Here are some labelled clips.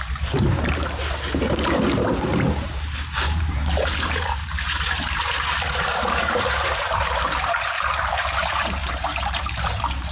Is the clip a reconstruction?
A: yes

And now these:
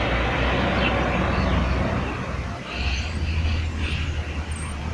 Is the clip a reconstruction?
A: no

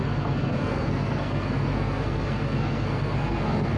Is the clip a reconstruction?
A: yes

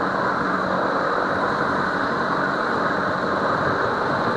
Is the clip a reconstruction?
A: no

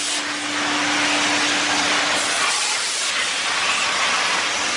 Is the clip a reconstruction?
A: no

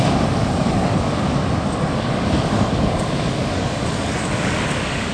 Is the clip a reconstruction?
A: yes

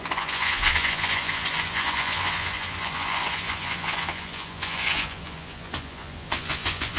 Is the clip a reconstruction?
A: yes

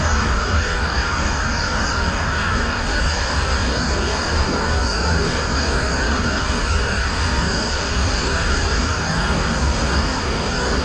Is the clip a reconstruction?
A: yes